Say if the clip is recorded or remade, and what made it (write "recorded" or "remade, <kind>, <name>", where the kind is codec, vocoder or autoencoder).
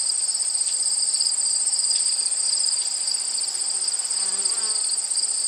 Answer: recorded